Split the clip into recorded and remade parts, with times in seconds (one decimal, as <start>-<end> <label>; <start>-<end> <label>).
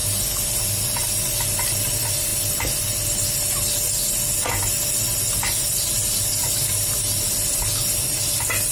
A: 0.0-8.7 recorded